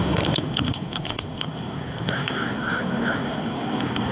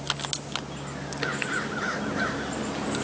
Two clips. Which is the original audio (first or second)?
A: second